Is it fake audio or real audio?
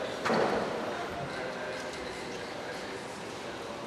real